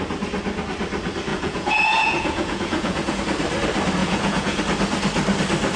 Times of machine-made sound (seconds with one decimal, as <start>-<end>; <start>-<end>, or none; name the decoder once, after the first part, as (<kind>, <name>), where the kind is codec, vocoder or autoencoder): 1.3-3.2 (vocoder, Vocos); 4.0-4.6